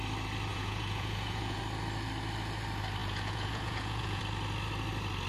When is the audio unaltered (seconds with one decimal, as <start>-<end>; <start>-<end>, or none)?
0.0-0.5; 1.6-3.0; 4.2-5.3